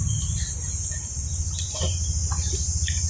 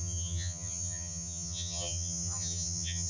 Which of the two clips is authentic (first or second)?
first